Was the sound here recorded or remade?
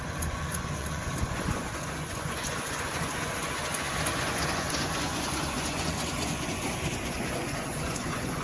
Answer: remade